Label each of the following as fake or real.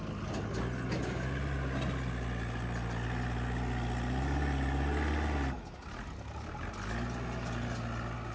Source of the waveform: real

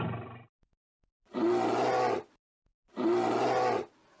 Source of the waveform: real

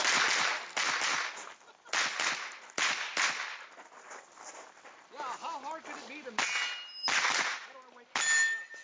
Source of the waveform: real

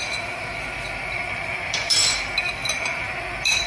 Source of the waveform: real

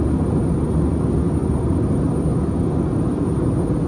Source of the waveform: real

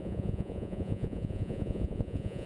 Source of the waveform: fake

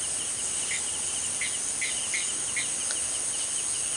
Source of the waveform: real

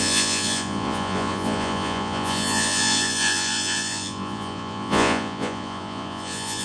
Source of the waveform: fake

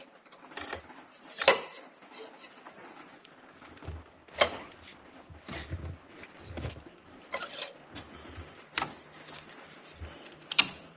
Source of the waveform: real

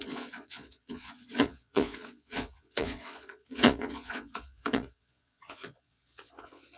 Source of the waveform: fake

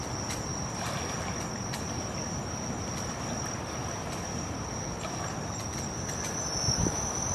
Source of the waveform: real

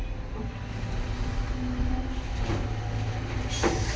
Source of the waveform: real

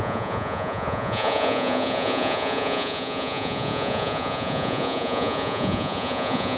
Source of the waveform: fake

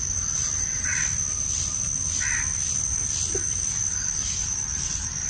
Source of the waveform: real